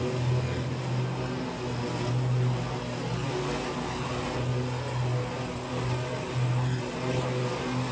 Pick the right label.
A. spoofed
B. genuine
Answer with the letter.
B